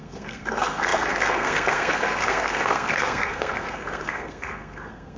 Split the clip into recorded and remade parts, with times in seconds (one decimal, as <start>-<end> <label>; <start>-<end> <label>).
0.0-5.2 remade